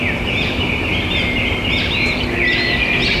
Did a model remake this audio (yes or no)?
no